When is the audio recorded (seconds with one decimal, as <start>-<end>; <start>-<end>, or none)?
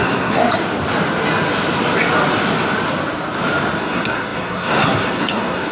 0.4-3.8